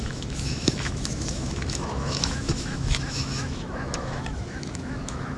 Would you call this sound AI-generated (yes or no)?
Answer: yes